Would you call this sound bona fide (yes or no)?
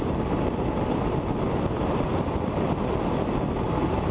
yes